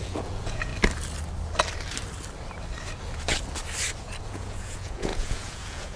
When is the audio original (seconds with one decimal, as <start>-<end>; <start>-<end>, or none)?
0.7-4.2